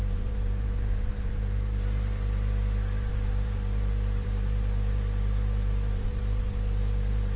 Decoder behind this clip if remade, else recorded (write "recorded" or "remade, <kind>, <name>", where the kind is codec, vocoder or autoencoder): remade, vocoder, BigVGAN v2